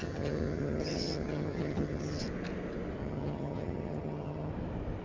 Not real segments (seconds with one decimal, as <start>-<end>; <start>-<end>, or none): 0.0-2.2; 3.0-4.5